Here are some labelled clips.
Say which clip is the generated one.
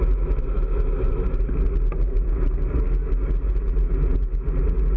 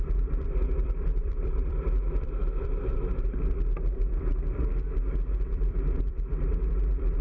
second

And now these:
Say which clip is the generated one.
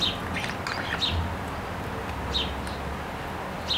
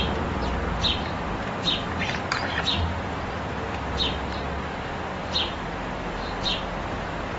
second